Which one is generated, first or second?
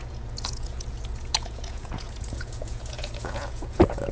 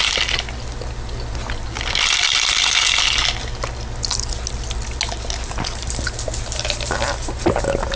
first